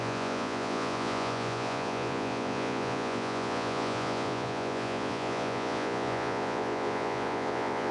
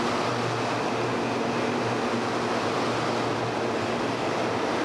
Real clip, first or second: second